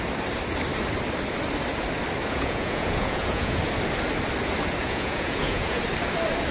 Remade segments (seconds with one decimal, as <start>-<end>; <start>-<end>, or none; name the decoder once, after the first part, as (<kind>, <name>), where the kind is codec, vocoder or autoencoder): 2.2-3.6 (vocoder, Vocos); 4.8-5.8